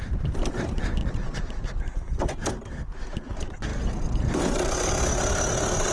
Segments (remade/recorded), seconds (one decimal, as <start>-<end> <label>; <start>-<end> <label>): 0.0-1.0 recorded; 1.0-1.8 remade; 1.8-5.9 recorded